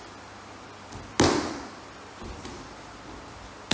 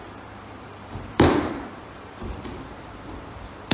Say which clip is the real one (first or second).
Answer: first